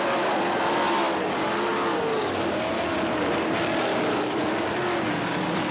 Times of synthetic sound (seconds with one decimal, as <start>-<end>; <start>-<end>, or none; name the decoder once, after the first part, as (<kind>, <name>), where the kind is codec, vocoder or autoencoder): none